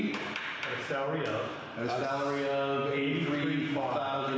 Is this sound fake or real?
real